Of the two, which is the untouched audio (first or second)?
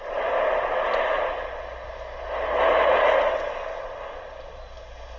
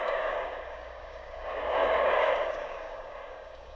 first